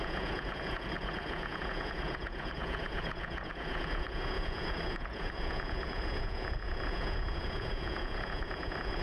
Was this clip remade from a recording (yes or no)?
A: yes